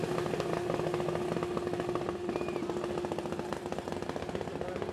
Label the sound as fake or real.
real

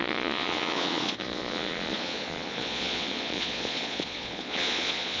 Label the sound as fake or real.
fake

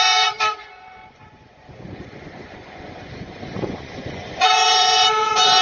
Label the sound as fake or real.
fake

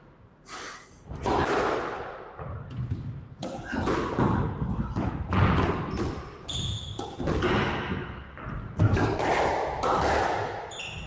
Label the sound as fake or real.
real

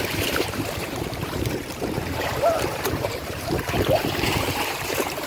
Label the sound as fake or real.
fake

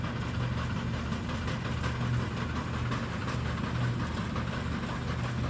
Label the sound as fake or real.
real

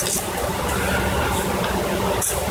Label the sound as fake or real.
real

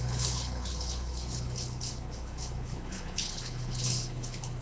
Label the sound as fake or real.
fake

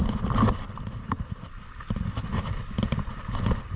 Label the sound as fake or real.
real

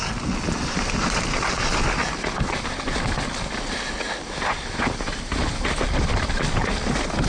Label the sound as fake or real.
real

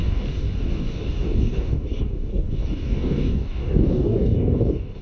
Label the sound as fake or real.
fake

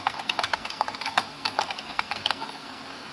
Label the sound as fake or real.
fake